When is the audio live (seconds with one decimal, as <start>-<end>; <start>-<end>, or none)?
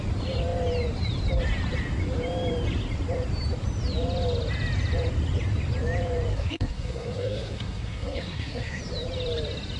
0.0-6.3; 8.8-9.8